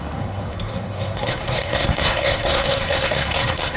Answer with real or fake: fake